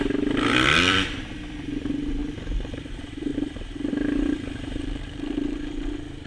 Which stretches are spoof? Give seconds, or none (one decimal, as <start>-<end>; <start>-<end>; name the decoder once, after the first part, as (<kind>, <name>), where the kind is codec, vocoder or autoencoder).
0.0-3.3 (vocoder, BigVGAN v2); 3.9-6.3